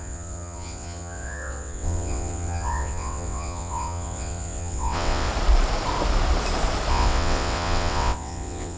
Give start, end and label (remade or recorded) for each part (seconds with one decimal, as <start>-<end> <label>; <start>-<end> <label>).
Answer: 0.0-5.3 remade; 5.3-6.9 recorded; 6.9-8.8 remade